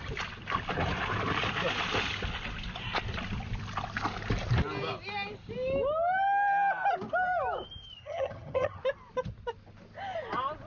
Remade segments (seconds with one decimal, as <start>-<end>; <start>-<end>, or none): 8.0-8.8